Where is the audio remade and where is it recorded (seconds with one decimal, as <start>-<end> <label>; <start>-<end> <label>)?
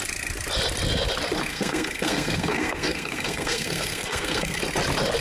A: 0.0-1.5 recorded; 1.5-4.6 remade; 4.6-5.2 recorded